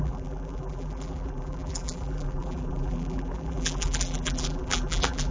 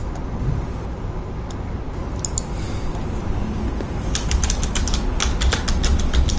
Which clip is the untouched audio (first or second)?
second